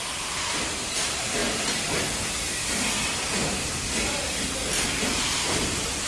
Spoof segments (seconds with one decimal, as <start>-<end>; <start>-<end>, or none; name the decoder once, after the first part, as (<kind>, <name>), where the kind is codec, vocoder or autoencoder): 0.0-1.4 (vocoder, BigVGAN v2); 5.1-6.1